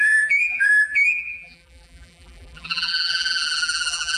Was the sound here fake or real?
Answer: fake